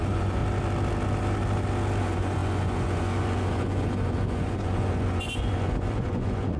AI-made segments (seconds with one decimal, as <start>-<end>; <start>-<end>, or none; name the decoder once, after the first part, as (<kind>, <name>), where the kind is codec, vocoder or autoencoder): 0.0-0.4 (vocoder, Vocos); 2.0-6.6